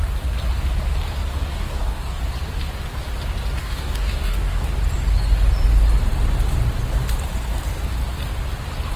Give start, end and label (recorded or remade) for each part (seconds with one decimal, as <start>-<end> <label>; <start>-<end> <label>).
0.0-1.3 recorded; 1.3-2.2 remade; 2.2-3.6 recorded; 3.6-4.7 remade; 4.7-9.0 recorded